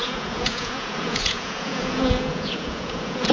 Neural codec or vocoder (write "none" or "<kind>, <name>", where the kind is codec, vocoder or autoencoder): vocoder, Vocos